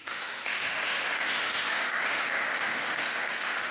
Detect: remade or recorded remade